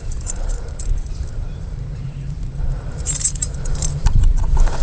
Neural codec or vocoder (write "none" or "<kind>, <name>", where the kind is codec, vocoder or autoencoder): vocoder, BigVGAN v2